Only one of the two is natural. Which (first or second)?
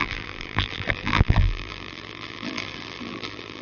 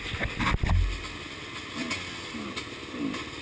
second